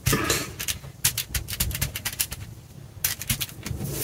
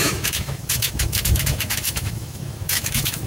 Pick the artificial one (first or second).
second